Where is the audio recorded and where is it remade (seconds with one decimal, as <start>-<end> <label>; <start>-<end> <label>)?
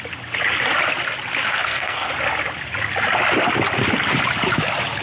0.0-1.5 recorded; 1.5-2.1 remade; 2.1-5.0 recorded